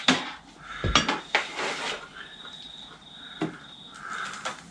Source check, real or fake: real